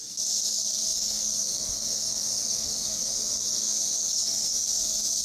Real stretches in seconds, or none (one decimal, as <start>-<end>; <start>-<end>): none